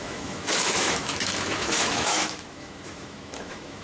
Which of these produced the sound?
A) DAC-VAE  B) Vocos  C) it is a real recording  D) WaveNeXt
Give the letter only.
A